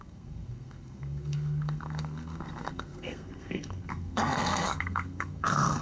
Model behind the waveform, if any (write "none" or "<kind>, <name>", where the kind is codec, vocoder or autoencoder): codec, SNAC